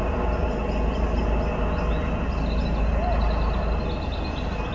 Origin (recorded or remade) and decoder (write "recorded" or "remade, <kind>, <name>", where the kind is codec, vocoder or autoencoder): recorded